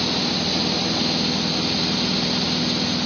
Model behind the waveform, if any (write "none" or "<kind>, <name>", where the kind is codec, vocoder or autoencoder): none